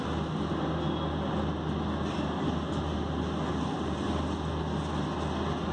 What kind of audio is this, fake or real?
real